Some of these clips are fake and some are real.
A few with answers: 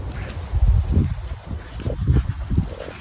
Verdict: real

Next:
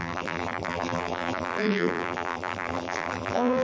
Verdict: fake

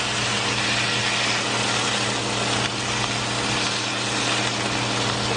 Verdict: real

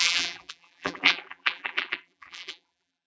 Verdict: fake